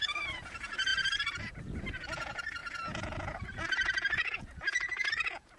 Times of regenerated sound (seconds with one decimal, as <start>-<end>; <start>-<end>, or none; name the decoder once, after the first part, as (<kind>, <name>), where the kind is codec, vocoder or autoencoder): 0.0-5.6 (vocoder, Vocos)